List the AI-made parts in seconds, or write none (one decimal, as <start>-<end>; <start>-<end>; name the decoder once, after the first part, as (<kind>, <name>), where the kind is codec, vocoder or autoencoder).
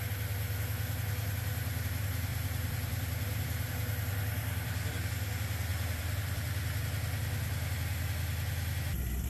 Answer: 2.3-5.1 (vocoder, BigVGAN v2); 5.7-6.8